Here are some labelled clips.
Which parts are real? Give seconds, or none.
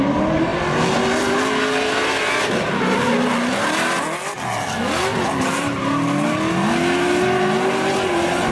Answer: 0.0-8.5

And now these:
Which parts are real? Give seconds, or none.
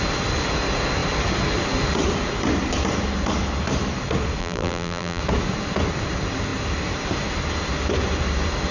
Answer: 0.0-4.4; 5.2-8.7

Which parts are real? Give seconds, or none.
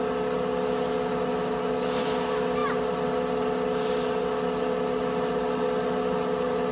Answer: 0.0-6.7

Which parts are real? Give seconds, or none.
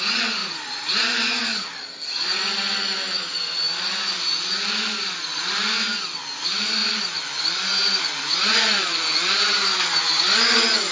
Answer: 0.0-10.9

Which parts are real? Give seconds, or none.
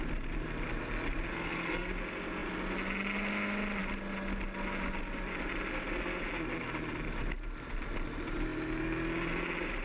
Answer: 0.0-1.3; 1.9-9.8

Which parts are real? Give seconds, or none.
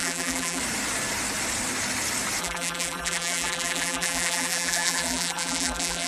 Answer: 0.6-2.4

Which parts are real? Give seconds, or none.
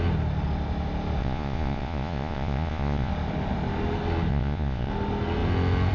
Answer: 0.0-1.2; 3.1-4.3; 4.9-5.9